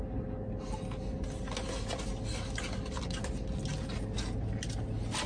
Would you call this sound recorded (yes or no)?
yes